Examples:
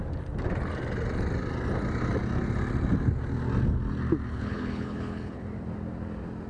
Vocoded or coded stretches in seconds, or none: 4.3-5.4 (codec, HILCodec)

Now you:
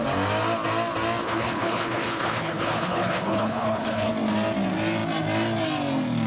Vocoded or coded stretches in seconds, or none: 1.2-4.1 (codec, HILCodec)

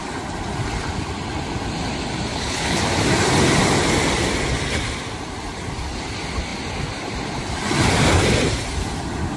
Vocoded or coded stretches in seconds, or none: 2.3-2.8 (codec, HILCodec)